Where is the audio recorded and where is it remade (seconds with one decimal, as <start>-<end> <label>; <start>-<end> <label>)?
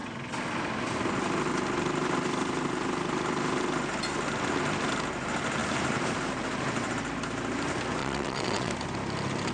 0.0-8.0 recorded; 8.0-8.7 remade; 8.7-9.5 recorded